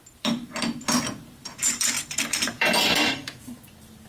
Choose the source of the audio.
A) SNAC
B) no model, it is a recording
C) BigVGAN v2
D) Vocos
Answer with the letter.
C